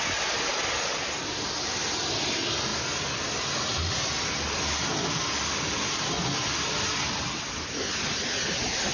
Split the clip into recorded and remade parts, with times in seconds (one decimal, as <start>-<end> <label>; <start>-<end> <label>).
0.0-8.9 recorded